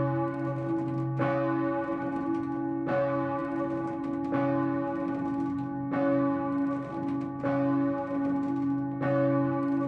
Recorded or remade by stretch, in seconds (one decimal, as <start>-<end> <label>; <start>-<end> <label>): 0.0-9.9 recorded